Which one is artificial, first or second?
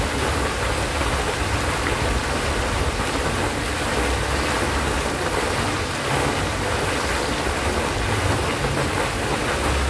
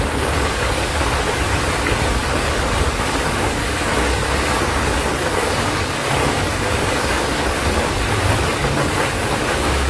second